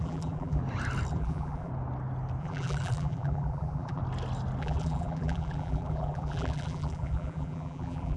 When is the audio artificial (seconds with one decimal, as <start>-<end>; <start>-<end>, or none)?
0.0-0.6; 1.1-1.7; 2.4-4.0; 4.6-8.2